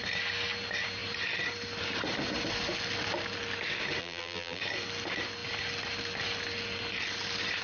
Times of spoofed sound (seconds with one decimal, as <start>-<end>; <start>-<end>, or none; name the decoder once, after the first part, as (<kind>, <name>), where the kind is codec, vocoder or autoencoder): 4.0-4.6 (vocoder, BigVGAN v2)